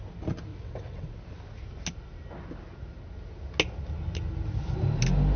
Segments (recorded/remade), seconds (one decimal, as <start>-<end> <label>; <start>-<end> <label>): 0.0-0.5 recorded; 0.5-1.1 remade; 1.1-5.4 recorded